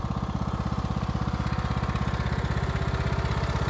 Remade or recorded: recorded